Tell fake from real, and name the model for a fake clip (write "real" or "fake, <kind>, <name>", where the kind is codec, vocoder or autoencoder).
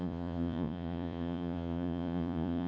fake, vocoder, Vocos